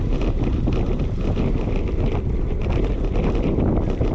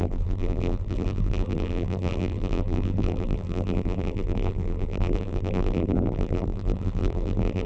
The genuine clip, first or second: first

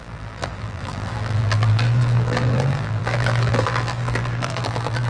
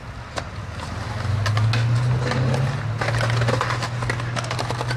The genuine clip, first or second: second